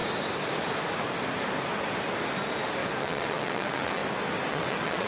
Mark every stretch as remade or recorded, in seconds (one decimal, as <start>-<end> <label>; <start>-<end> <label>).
0.0-3.0 recorded; 3.0-4.0 remade; 4.0-4.5 recorded; 4.5-5.1 remade